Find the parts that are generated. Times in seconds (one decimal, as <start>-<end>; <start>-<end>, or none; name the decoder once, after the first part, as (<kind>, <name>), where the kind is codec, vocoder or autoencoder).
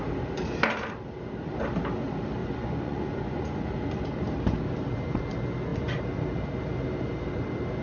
2.4-3.6 (vocoder, Vocos)